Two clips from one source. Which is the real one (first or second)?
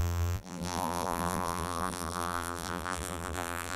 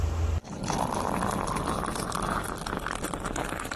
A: second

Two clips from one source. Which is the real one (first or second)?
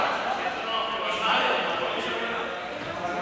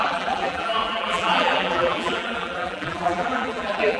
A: first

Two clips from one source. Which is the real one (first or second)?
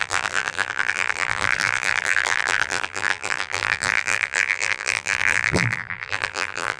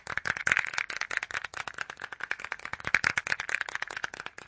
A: second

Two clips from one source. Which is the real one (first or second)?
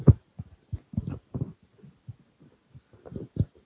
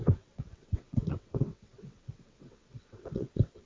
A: first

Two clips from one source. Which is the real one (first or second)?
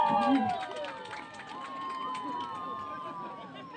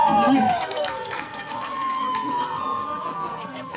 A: first